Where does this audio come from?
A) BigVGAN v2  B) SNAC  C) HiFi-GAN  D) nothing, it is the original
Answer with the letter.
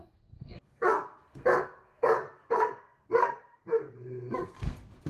B